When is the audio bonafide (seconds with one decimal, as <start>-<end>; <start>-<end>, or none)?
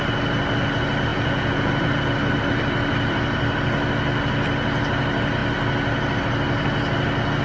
0.0-1.1; 1.7-7.4